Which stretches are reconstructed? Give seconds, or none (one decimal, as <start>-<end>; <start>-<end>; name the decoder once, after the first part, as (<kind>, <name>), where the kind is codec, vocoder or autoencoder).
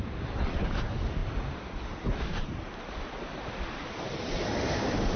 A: none